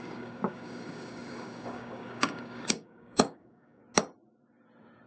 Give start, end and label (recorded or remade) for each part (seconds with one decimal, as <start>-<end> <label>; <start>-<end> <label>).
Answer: 0.0-3.8 remade; 3.8-5.1 recorded